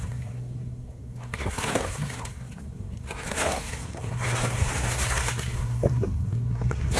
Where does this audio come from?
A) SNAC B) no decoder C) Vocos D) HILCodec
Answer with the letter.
A